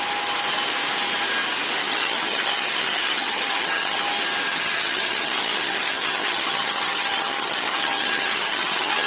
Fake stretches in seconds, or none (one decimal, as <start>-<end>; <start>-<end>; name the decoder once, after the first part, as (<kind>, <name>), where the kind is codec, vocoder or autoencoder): 1.8-4.0 (vocoder, HiFi-GAN); 4.5-9.1